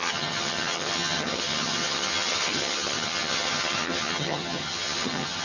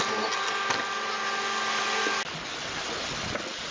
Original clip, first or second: second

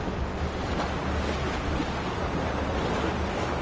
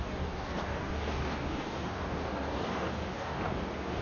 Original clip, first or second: first